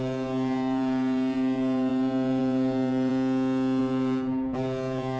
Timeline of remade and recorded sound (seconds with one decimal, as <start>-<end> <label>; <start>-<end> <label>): 0.0-3.1 remade; 3.1-3.8 recorded; 3.8-5.2 remade